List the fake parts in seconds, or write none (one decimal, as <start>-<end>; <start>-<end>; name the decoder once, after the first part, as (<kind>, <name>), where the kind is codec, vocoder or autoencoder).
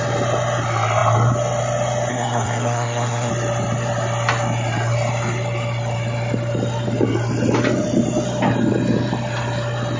2.1-3.3 (codec, SNAC)